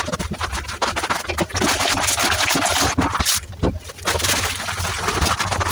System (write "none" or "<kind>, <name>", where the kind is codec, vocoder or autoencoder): none